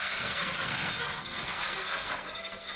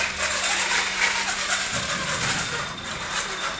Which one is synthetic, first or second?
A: first